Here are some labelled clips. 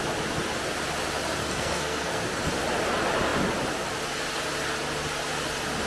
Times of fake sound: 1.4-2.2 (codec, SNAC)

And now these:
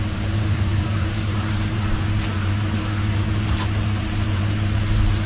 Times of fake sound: 0.0-5.3 (vocoder, BigVGAN v2)

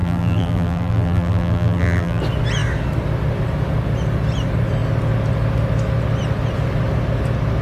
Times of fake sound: 0.0-2.2 (vocoder, BigVGAN v2)

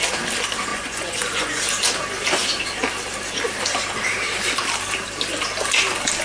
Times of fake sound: 0.7-1.6 (vocoder, Vocos)

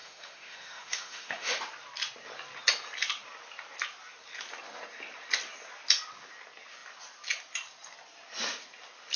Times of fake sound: 0.0-1.6 (autoencoder, DAC-VAE)

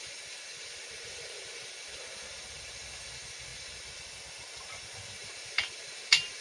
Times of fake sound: 0.5-1.4 (vocoder, BigVGAN v2); 3.5-4.5; 5.2-6.4

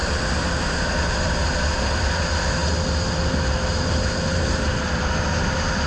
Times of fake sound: none